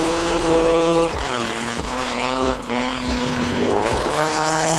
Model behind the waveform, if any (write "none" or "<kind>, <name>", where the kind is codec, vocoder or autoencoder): codec, HILCodec